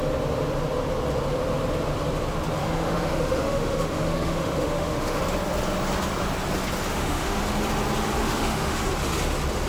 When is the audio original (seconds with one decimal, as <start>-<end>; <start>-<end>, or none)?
0.0-2.6; 5.2-6.9; 7.4-8.2; 8.9-9.7